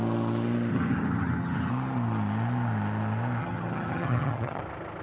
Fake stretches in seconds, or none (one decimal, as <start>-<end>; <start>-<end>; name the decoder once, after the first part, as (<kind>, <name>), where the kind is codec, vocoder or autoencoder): 0.7-1.7 (vocoder, HiFi-GAN); 3.4-4.6